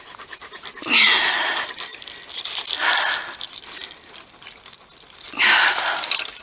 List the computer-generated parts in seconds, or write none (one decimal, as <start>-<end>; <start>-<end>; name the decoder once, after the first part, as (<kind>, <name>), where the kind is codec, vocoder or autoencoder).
none

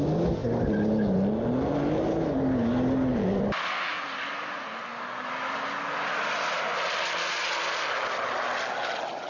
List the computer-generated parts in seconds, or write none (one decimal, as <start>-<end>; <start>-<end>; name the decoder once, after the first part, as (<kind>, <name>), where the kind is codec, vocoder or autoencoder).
3.1-4.6 (vocoder, BigVGAN v2)